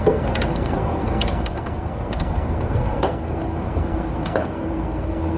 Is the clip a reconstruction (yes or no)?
yes